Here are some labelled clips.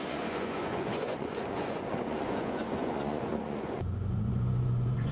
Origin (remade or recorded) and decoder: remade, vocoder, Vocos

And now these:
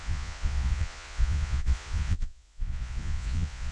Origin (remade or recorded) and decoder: remade, vocoder, Vocos